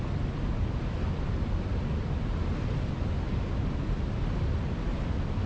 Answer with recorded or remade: recorded